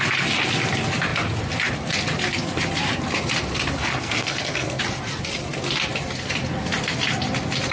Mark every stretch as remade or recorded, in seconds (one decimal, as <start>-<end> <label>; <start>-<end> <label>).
0.0-3.9 recorded; 3.9-4.8 remade; 4.8-7.7 recorded